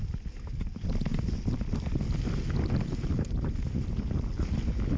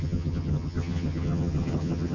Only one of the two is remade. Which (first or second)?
second